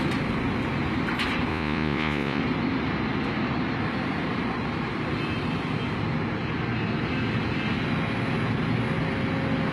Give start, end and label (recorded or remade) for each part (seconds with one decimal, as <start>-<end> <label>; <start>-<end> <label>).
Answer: 0.0-1.5 recorded; 1.5-2.4 remade; 2.4-9.7 recorded